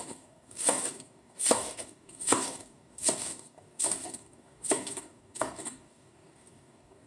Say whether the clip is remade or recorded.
remade